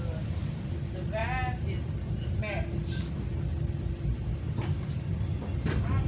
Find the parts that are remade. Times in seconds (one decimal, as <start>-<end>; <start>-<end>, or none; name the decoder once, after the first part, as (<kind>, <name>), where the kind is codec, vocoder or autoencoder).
0.0-1.2 (vocoder, BigVGAN v2); 4.9-6.1